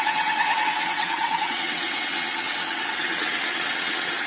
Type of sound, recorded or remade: remade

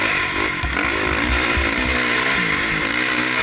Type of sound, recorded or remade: recorded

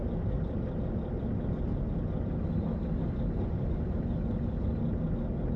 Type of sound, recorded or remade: recorded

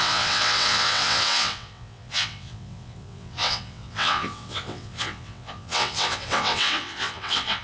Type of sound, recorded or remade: remade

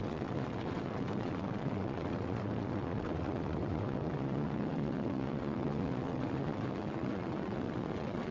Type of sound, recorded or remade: remade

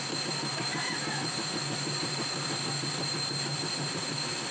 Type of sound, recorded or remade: recorded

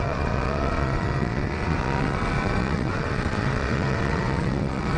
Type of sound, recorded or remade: remade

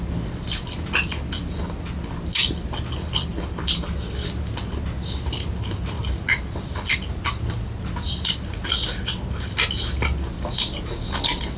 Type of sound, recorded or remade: recorded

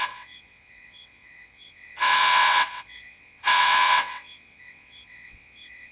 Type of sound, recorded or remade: remade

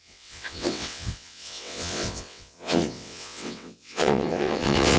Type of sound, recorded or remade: remade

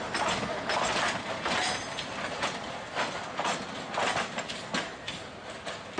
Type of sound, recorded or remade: recorded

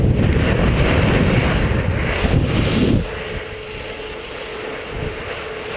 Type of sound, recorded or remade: recorded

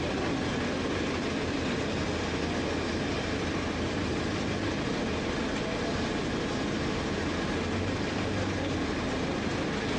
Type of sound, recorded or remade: recorded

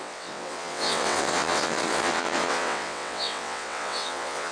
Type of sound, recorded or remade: remade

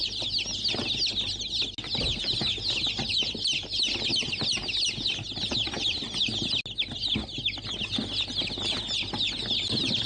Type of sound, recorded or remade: recorded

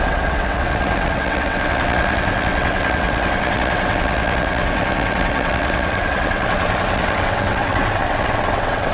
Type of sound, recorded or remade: remade